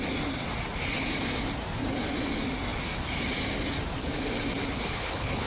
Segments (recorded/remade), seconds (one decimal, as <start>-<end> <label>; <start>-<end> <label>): 0.0-4.8 recorded; 4.8-5.5 remade